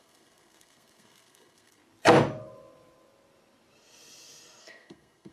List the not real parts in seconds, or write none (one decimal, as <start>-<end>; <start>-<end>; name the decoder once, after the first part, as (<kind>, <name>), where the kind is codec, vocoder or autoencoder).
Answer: 0.0-1.8 (codec, SNAC); 4.6-5.3